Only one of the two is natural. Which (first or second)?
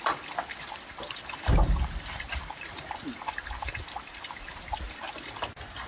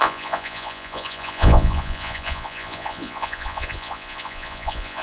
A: first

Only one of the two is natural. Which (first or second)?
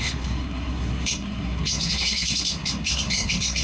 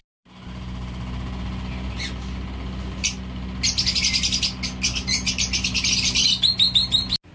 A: second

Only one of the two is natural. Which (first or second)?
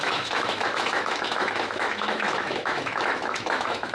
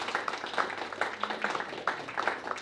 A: second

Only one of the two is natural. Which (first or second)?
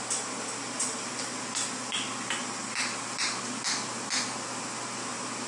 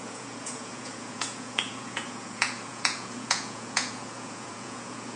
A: first